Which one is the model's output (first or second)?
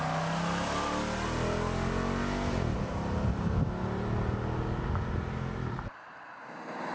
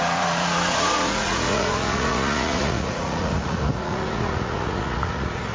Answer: second